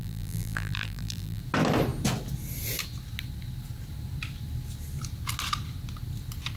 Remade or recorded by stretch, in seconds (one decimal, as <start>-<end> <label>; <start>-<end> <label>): 0.0-1.4 remade; 1.4-6.6 recorded